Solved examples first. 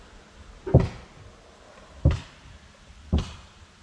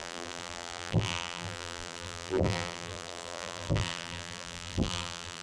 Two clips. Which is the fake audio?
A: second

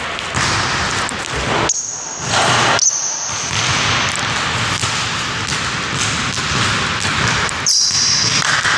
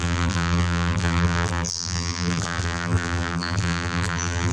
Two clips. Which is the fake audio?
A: second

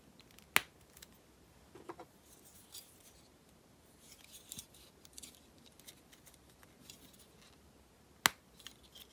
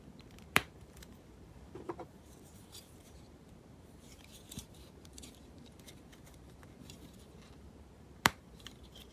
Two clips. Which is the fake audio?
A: second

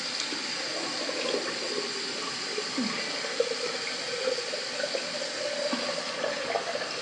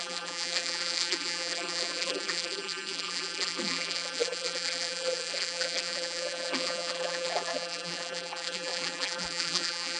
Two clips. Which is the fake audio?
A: second